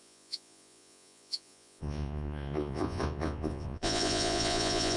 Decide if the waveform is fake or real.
fake